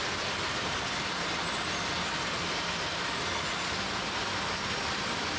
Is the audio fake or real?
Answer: real